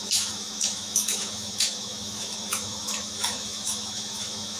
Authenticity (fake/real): fake